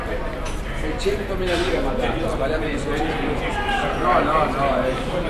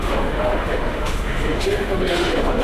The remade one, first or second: second